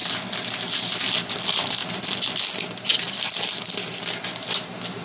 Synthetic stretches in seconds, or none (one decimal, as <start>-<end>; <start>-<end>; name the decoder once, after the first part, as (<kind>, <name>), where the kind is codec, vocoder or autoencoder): none

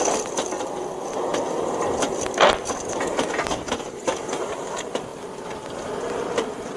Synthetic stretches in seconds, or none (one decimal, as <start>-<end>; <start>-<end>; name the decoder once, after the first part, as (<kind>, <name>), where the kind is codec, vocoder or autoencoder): none

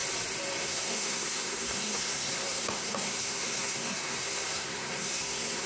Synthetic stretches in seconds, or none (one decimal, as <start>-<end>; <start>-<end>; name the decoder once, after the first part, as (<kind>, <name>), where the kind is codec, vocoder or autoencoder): 0.6-5.7 (codec, SNAC)

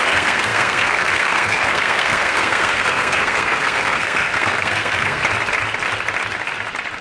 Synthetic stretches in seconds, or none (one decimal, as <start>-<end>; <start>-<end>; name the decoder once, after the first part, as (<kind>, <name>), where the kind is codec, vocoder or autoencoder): 0.0-5.2 (codec, SNAC)